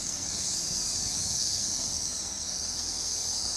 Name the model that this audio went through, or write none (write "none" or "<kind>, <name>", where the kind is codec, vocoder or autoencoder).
codec, SNAC